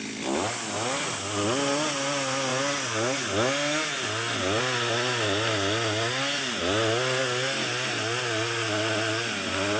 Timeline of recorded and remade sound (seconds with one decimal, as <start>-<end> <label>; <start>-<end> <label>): 0.0-9.8 recorded